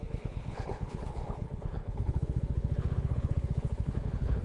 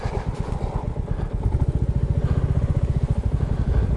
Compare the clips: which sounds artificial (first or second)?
first